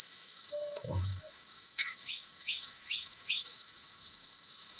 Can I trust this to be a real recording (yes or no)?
no